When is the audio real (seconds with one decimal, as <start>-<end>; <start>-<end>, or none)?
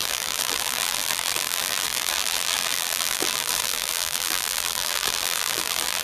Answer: none